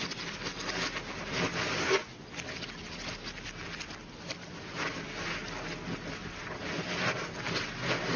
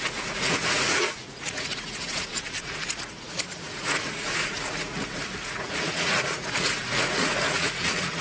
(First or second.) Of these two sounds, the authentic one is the first